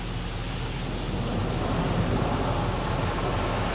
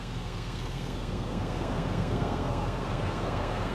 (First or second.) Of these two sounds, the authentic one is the first